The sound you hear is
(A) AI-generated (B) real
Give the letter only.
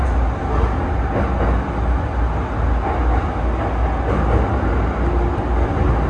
B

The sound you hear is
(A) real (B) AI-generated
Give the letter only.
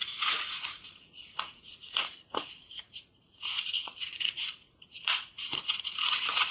B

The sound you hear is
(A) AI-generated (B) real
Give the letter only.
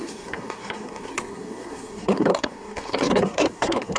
A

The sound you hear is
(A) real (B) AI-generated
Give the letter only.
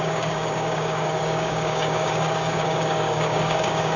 B